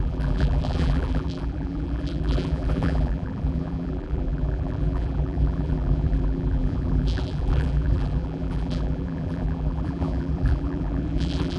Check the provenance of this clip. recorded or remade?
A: remade